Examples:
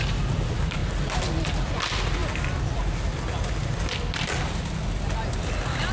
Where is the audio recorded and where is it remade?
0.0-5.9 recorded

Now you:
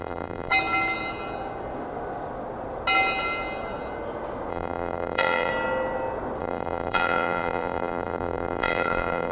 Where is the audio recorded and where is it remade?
0.0-0.5 remade; 0.5-4.5 recorded; 4.5-5.5 remade; 5.5-6.4 recorded; 6.4-9.3 remade